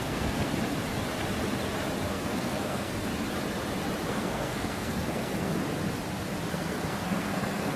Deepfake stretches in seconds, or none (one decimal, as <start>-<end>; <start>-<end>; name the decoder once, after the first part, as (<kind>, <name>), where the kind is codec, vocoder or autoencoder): 0.0-0.5 (codec, SNAC); 2.1-3.1; 4.1-5.6; 6.5-7.8